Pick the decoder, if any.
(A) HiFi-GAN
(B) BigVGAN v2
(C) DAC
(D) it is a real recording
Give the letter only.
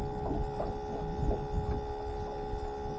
D